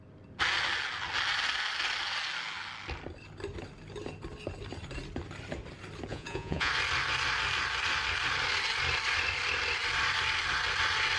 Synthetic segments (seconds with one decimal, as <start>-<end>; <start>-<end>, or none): 6.1-6.7